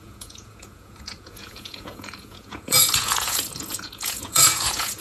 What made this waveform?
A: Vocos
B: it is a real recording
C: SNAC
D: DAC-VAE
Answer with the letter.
A